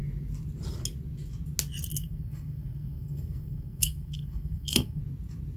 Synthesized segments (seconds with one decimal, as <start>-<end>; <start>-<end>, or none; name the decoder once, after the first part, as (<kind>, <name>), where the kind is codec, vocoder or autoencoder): 1.9-5.0 (codec, SNAC)